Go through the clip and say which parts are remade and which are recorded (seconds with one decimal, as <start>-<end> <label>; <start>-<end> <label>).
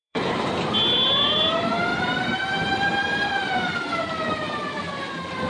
0.0-5.5 remade